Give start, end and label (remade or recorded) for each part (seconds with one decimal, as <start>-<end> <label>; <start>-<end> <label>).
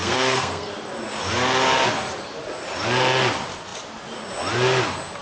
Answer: 0.0-0.7 remade; 0.7-5.2 recorded